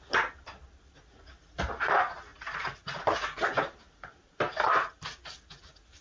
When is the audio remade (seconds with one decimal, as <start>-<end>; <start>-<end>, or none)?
none